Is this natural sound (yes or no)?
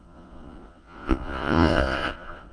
no